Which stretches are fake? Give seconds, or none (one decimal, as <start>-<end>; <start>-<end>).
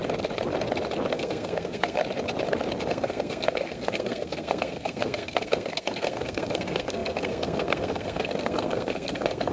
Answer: 1.1-2.0; 2.9-9.5